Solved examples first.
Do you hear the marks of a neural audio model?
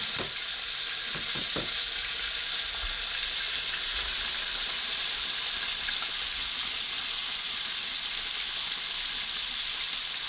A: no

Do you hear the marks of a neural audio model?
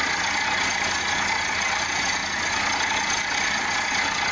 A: no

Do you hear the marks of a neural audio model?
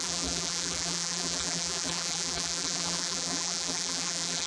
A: yes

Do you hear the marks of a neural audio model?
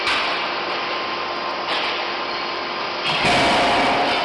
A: no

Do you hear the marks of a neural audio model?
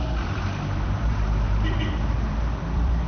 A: yes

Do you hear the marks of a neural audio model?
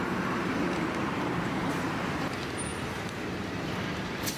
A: yes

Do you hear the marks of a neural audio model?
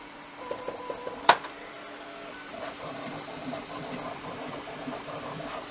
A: yes